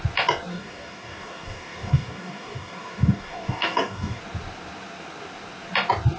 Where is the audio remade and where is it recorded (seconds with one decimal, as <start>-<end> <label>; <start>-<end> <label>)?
0.0-0.5 recorded; 0.5-4.2 remade; 4.2-6.2 recorded